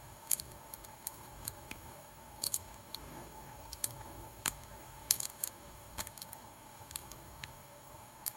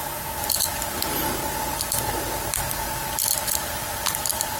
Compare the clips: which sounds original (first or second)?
second